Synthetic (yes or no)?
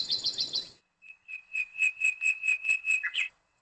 yes